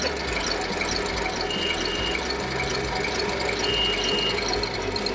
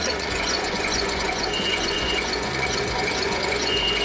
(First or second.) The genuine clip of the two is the first